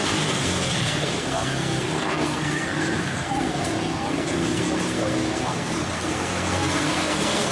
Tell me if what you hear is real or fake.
fake